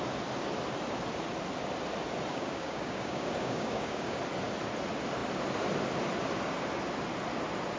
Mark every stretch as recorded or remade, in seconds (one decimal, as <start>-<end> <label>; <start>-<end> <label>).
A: 0.0-2.3 recorded; 2.3-4.2 remade; 4.2-7.8 recorded